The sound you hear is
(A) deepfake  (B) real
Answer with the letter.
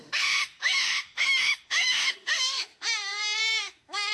A